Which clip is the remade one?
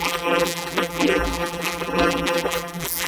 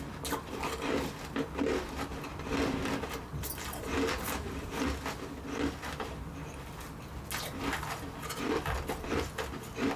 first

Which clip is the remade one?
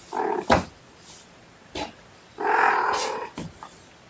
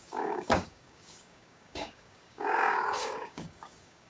second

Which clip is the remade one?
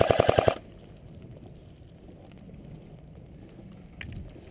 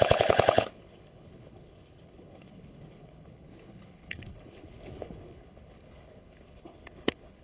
second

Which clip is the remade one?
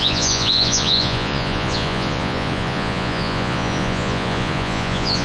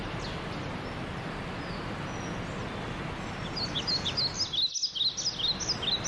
first